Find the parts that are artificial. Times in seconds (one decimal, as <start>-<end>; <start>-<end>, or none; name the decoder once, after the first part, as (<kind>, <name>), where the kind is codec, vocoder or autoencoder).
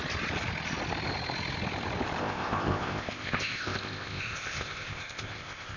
2.2-5.8 (codec, ZipCodec)